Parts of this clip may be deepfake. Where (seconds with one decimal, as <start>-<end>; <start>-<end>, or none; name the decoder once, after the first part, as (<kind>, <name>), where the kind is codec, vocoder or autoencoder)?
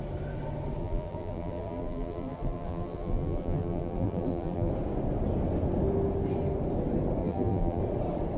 0.8-4.7 (vocoder, BigVGAN v2); 7.2-7.8